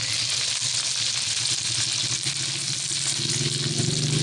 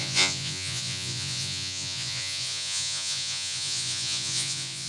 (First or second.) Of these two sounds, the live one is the first